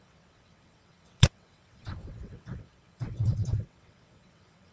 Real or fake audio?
fake